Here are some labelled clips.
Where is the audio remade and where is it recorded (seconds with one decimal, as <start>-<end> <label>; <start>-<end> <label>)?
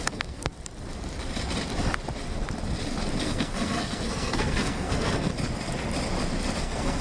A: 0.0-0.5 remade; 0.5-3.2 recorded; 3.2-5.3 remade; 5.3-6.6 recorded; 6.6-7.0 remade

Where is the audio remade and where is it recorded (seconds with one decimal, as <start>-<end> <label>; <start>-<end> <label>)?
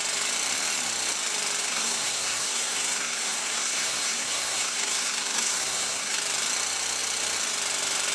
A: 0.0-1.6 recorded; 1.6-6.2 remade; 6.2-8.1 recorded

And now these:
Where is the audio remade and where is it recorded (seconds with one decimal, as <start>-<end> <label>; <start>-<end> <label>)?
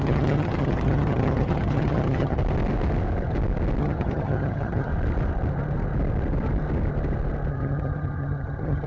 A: 0.0-2.4 remade; 2.4-3.8 recorded; 3.8-4.9 remade; 4.9-7.5 recorded; 7.5-8.9 remade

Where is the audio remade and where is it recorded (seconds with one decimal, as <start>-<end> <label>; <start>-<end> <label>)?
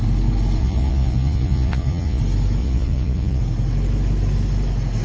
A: 0.0-0.6 recorded; 0.6-2.2 remade; 2.2-2.6 recorded; 2.6-3.4 remade; 3.4-5.0 recorded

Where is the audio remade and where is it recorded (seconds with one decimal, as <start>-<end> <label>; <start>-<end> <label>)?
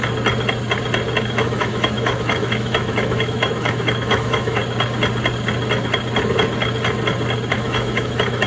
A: 0.0-1.2 recorded; 1.2-4.6 remade; 4.6-7.5 recorded; 7.5-8.5 remade